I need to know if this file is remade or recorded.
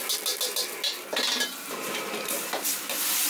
recorded